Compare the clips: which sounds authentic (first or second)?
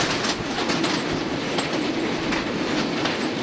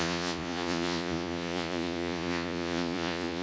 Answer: first